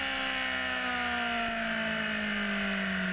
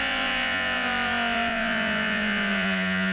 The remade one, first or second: second